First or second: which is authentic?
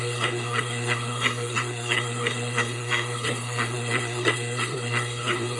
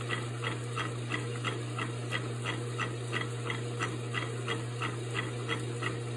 second